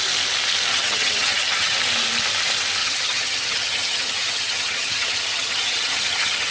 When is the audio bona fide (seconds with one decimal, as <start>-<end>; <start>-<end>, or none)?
0.0-0.7; 1.8-2.8